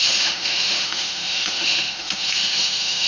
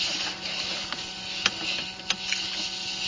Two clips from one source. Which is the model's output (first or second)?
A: first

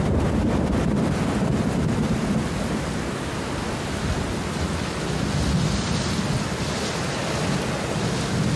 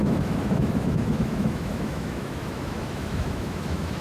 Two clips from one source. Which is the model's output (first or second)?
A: second